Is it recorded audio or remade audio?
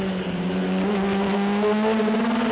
recorded